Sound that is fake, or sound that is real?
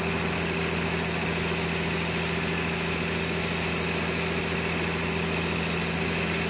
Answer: real